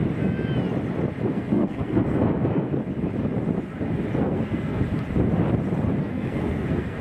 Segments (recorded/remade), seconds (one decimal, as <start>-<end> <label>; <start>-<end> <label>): 0.0-1.3 recorded; 1.3-2.8 remade; 2.8-4.2 recorded; 4.2-4.8 remade; 4.8-6.0 recorded; 6.0-7.0 remade